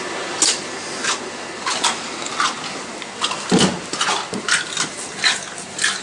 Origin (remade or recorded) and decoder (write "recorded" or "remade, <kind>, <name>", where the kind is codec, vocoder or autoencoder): recorded